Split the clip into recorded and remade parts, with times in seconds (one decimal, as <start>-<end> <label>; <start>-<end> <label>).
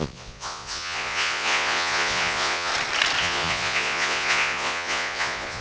0.0-2.7 remade; 2.7-3.2 recorded; 3.2-5.6 remade